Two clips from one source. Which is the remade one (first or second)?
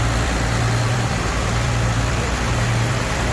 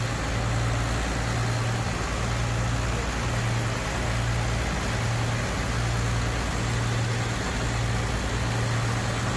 first